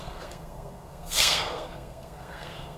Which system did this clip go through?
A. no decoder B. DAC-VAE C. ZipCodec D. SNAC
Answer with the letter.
D